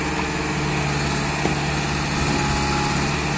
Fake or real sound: real